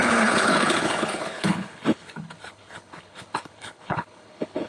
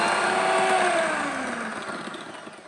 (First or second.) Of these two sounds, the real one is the second